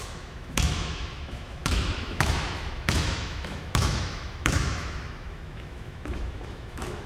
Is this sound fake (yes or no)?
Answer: yes